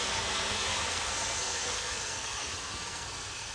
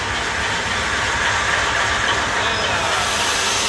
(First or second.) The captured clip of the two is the second